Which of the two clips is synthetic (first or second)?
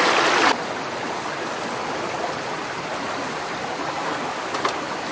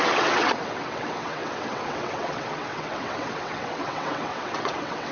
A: second